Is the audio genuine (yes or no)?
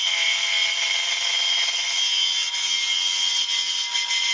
yes